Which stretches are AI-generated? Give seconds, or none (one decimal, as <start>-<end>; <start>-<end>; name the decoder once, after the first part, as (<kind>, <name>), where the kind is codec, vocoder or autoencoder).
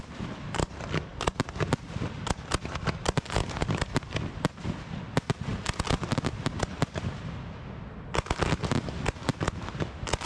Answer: none